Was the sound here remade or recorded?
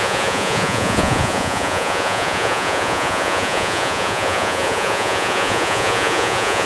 remade